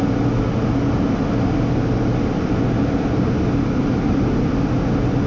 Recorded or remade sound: recorded